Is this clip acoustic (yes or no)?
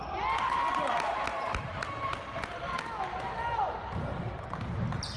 yes